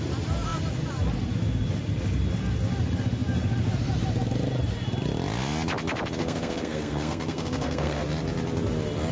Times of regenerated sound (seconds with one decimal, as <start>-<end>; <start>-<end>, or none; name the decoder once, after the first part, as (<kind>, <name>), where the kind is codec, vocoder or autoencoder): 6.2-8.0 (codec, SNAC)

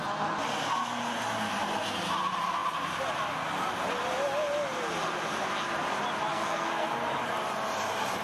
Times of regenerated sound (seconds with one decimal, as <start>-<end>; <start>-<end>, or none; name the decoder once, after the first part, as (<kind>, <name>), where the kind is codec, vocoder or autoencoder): 6.3-6.9 (codec, SNAC)

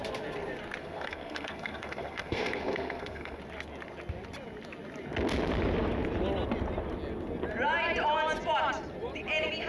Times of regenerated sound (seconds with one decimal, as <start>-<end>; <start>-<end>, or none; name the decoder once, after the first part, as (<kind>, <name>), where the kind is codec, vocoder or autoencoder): 0.8-3.4 (codec, SNAC)

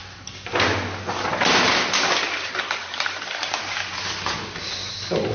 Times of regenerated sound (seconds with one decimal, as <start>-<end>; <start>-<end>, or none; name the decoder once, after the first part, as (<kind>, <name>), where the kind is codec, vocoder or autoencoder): none